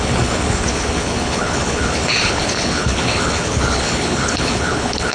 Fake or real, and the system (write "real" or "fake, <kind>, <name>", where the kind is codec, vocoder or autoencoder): fake, codec, HILCodec